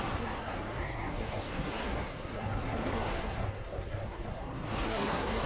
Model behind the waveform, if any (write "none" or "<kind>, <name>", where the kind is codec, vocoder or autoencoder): codec, SNAC